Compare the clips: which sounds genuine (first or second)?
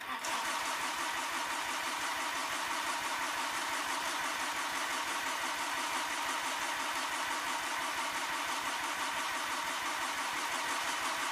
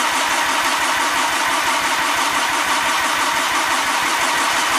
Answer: first